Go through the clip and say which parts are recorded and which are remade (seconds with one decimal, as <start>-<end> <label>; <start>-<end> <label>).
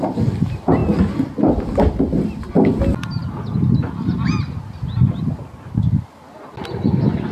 0.0-7.3 recorded